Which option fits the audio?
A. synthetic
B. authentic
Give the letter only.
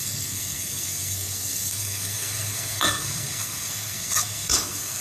A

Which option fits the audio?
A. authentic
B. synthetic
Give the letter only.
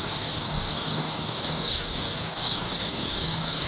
B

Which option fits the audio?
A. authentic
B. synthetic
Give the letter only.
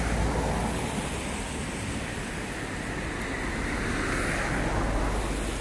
A